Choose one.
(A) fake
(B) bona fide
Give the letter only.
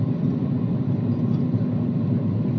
B